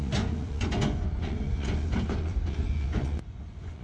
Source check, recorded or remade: remade